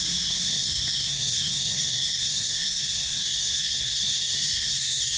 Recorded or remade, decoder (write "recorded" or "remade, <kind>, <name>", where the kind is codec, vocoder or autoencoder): remade, codec, SNAC